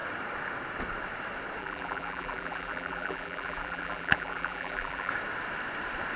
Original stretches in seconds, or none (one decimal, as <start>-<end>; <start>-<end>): 0.0-1.6; 5.1-6.2